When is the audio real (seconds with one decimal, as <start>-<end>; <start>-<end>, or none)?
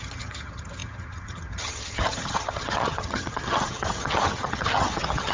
none